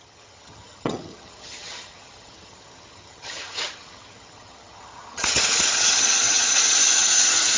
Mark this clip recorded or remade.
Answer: remade